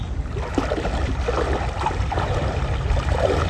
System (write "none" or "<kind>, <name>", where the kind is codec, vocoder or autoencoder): none